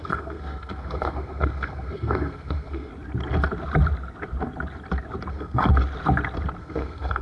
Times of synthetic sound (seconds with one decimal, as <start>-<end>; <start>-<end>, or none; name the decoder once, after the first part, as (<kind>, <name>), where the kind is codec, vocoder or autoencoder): 0.0-2.9 (codec, SNAC); 5.3-5.7; 6.6-7.2